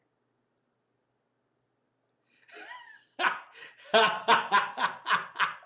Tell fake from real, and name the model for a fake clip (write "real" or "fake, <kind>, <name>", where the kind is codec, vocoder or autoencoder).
real